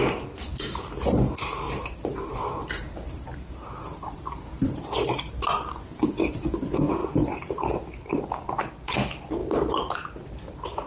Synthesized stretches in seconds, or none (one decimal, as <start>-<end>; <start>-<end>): 0.5-4.9; 9.4-10.9